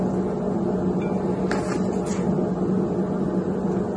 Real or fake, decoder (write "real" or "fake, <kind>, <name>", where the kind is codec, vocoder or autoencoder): real